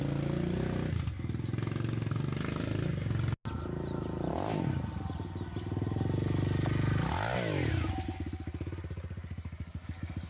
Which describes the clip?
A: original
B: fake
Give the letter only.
A